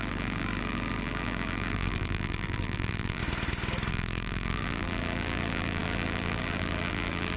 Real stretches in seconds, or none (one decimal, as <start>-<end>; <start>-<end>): 3.2-3.9